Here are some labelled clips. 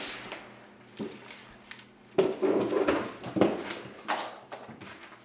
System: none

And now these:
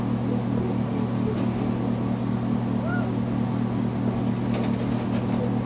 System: none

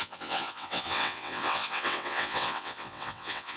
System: vocoder, WaveNeXt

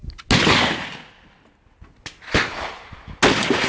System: none